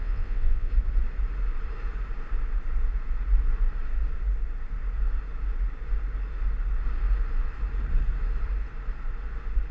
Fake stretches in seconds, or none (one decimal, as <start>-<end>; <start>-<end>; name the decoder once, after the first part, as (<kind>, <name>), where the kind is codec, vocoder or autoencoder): 0.0-0.7 (vocoder, WaveNeXt)